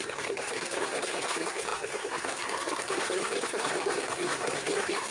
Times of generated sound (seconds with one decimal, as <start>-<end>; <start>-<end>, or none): 0.0-5.1